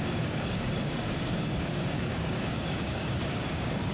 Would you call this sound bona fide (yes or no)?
no